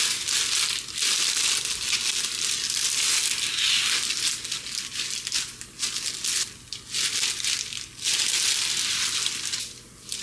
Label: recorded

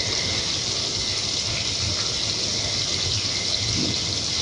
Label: recorded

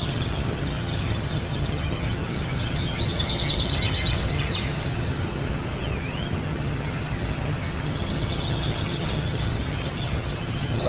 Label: remade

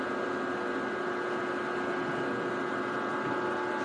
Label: recorded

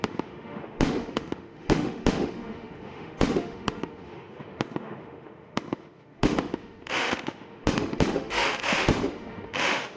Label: remade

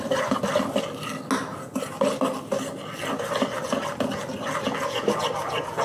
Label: recorded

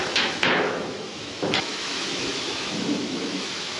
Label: remade